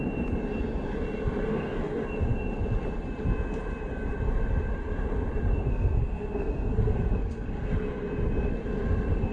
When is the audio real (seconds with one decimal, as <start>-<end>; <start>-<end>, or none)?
0.0-1.5; 2.0-5.7; 7.7-9.3